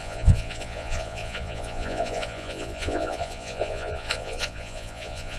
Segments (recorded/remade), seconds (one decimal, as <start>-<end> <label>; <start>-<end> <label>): 0.0-5.4 remade